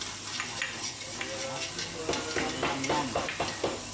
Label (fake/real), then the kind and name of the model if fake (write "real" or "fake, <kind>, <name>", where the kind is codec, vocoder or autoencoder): real